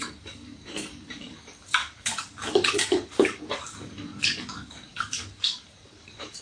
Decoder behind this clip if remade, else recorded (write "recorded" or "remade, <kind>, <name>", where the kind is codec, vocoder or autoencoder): remade, codec, DAC